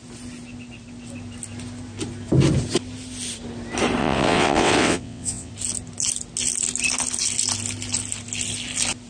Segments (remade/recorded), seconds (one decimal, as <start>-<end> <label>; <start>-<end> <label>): 0.0-4.0 recorded; 4.0-5.5 remade; 5.5-9.1 recorded